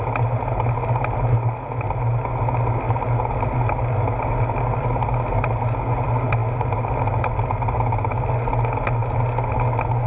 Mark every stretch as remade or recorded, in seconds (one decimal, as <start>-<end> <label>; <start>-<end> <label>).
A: 0.0-10.1 recorded